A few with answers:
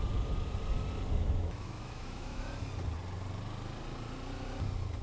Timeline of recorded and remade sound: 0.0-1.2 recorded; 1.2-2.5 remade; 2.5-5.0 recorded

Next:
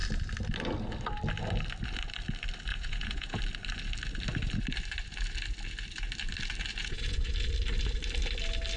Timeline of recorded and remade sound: 0.0-2.7 recorded; 2.7-3.4 remade; 3.4-6.8 recorded; 6.8-7.3 remade; 7.3-8.8 recorded

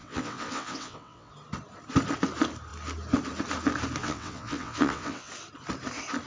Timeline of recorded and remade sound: 0.0-1.3 remade; 1.3-4.0 recorded; 4.0-5.3 remade; 5.3-6.3 recorded

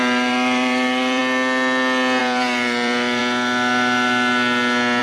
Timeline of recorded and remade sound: 0.0-1.2 remade; 1.2-2.2 recorded; 2.2-3.2 remade; 3.2-5.0 recorded

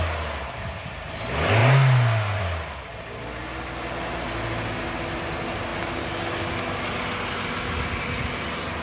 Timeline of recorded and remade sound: 0.0-8.8 recorded